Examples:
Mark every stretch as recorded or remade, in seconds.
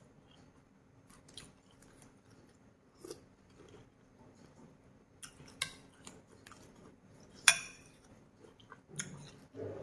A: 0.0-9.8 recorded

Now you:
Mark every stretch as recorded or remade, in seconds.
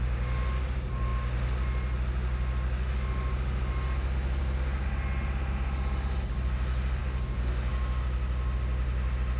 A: 0.0-9.4 recorded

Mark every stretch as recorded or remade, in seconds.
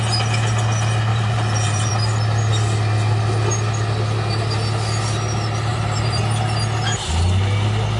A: 0.0-1.1 recorded; 1.1-1.9 remade; 1.9-5.7 recorded; 5.7-6.2 remade; 6.2-8.0 recorded